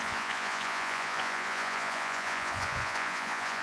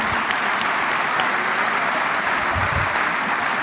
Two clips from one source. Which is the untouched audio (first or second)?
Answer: second